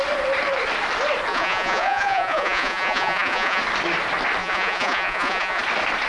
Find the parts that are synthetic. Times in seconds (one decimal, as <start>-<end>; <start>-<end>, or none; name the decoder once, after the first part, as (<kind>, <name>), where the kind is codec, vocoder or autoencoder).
1.3-3.6 (vocoder, Vocos); 4.4-5.6